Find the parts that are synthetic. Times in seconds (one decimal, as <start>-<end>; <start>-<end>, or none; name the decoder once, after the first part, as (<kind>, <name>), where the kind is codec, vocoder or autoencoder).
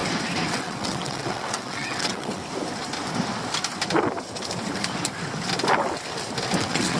0.5-2.4 (vocoder, WaveNeXt); 6.6-7.0